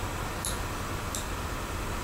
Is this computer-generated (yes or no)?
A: no